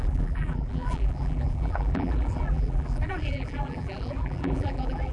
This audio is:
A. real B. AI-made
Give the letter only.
B